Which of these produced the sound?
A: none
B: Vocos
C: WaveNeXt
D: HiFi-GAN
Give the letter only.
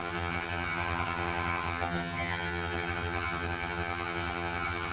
D